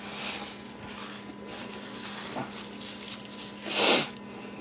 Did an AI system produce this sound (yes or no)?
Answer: no